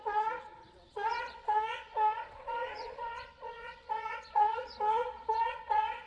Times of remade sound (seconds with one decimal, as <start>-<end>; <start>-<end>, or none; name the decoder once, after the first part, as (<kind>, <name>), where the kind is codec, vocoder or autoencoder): 0.0-6.1 (vocoder, Vocos)

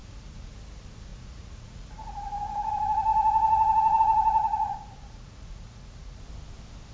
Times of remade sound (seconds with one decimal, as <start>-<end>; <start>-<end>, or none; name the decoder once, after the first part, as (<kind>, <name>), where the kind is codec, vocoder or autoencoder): 0.0-0.5 (vocoder, Vocos); 1.1-2.7; 4.4-6.2